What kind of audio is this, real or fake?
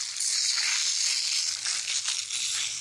real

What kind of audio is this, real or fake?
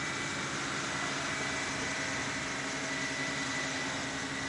real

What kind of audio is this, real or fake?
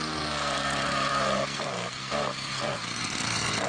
fake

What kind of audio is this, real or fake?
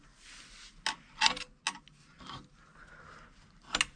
real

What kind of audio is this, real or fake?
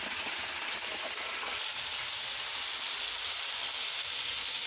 real